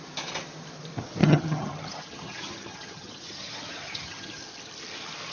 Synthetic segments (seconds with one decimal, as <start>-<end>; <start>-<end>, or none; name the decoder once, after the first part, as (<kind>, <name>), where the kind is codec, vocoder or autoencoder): 1.2-4.4 (vocoder, HiFi-GAN)